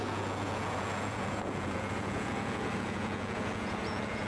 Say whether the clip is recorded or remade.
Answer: remade